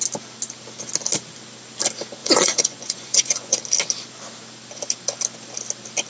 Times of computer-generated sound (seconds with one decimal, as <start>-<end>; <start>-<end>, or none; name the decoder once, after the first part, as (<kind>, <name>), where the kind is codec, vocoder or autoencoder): 2.2-3.6 (vocoder, Vocos)